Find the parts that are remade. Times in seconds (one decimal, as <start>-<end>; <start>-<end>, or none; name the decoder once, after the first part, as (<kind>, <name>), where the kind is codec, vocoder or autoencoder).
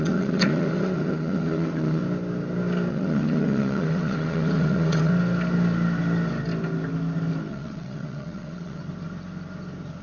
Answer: 0.0-2.0 (vocoder, WaveNeXt); 2.9-5.1; 7.5-8.8